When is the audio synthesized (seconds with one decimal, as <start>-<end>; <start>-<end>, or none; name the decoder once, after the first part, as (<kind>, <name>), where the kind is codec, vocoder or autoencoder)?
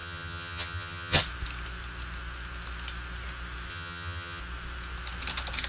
0.0-1.2 (vocoder, HiFi-GAN); 3.7-4.4